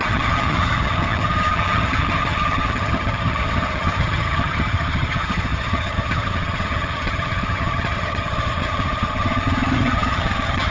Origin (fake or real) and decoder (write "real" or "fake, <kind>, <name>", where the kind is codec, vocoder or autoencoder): fake, vocoder, HiFi-GAN